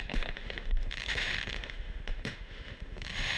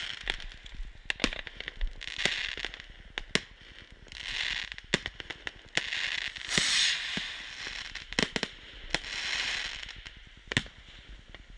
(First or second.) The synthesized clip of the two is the first